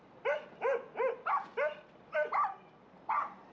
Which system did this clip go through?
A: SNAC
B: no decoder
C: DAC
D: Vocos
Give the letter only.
B